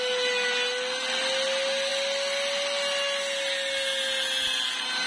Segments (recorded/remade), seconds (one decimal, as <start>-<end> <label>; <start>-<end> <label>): 0.0-5.1 recorded